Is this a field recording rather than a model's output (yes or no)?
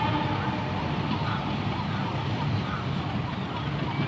yes